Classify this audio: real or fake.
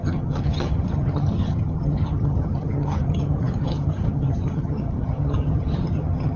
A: fake